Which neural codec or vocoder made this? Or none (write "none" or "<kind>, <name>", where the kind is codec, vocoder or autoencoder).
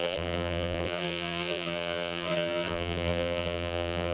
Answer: vocoder, BigVGAN v2